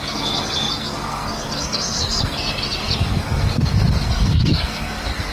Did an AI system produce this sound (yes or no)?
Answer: yes